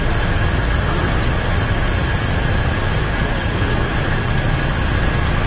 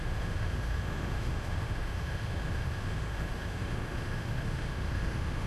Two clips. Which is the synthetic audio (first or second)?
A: second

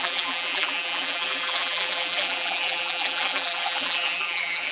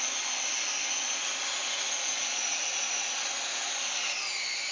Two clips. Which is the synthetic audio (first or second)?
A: first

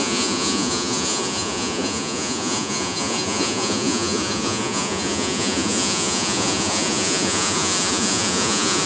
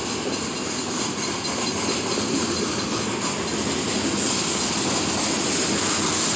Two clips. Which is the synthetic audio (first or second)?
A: first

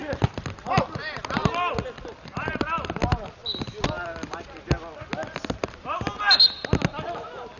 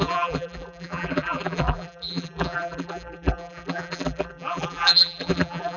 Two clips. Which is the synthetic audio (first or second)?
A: second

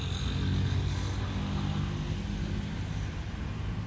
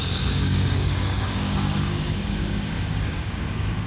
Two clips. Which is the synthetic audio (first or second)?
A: second